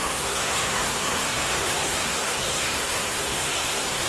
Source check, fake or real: fake